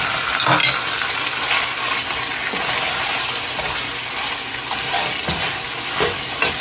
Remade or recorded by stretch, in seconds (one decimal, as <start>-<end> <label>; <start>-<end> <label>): 0.0-6.6 recorded